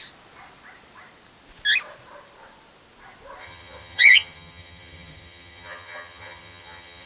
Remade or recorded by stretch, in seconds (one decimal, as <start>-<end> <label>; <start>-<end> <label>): 0.0-3.4 recorded; 3.4-7.1 remade